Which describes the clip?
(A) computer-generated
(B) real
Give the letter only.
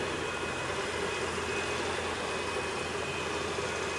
B